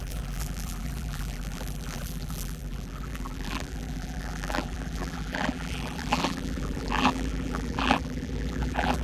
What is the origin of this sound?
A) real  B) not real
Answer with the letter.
B